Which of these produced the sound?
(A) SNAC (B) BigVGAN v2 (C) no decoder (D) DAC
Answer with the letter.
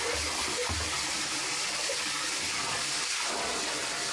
C